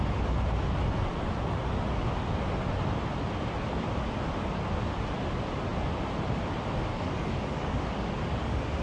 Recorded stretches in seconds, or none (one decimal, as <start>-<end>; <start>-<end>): 0.0-6.9